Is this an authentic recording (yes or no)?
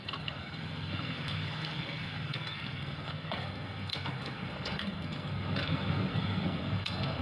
no